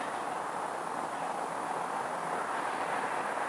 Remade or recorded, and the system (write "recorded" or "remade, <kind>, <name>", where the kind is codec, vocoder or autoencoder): recorded